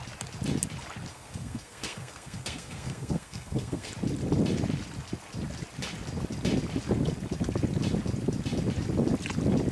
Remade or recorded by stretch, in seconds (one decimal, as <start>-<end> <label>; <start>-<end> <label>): 0.0-1.1 recorded; 1.1-3.9 remade; 3.9-9.7 recorded